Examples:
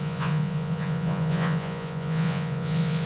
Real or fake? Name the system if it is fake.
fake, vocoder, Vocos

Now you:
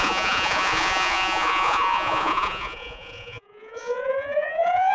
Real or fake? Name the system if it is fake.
fake, vocoder, Vocos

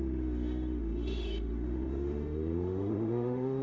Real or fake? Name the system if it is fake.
fake, autoencoder, DAC-VAE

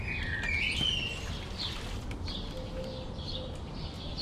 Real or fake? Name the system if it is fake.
real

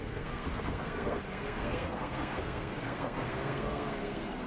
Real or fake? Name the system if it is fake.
fake, codec, SNAC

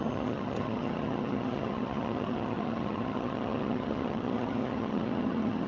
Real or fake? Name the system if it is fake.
fake, vocoder, HiFi-GAN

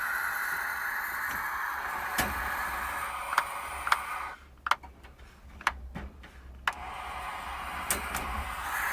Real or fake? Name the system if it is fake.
real